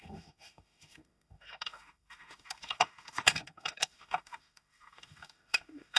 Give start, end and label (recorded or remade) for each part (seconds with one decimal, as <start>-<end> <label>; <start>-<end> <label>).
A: 0.0-6.0 remade